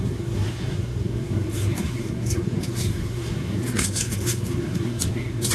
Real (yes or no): no